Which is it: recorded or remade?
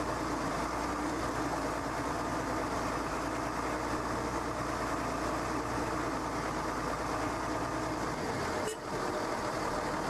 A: recorded